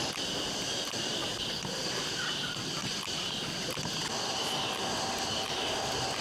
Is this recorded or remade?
recorded